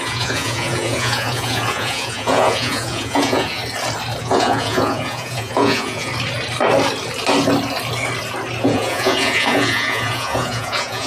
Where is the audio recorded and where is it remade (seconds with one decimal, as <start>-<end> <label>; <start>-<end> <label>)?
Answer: 0.0-3.6 remade; 3.6-4.2 recorded; 4.2-6.1 remade; 6.1-8.6 recorded; 8.6-11.1 remade